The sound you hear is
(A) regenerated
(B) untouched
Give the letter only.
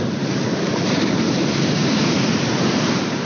A